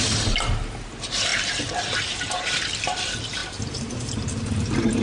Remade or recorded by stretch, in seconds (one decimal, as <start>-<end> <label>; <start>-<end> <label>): 0.0-1.3 recorded; 1.3-2.7 remade; 2.7-3.4 recorded; 3.4-4.1 remade; 4.1-5.0 recorded